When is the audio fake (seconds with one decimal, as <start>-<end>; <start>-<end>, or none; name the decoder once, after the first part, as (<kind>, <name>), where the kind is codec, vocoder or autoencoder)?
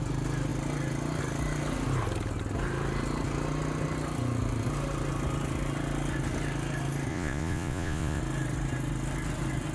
7.1-8.2 (vocoder, Vocos)